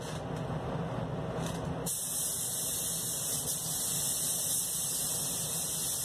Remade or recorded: recorded